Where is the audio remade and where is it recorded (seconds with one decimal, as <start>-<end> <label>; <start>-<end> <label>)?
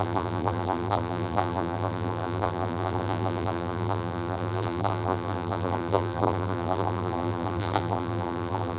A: 0.0-8.8 remade